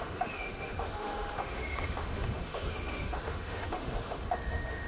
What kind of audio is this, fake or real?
fake